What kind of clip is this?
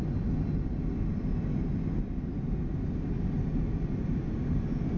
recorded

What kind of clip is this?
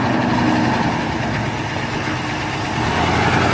recorded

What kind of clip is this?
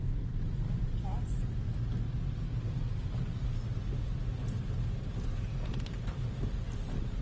recorded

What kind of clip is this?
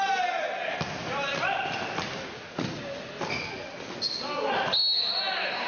recorded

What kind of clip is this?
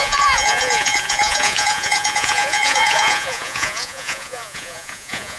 remade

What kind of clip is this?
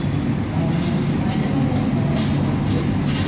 recorded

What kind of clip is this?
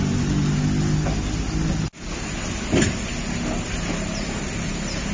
recorded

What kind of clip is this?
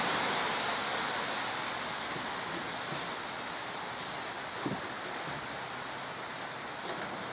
recorded